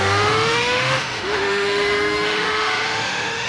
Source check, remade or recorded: remade